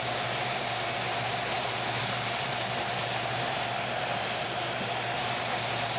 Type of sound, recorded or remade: recorded